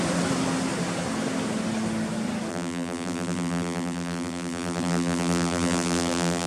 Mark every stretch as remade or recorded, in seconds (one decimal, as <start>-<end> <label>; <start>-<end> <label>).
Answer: 0.0-2.5 recorded; 2.5-6.5 remade